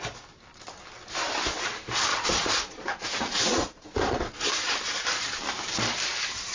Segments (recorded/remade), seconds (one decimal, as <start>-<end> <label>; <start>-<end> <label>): 0.0-2.1 recorded; 2.1-4.5 remade; 4.5-6.5 recorded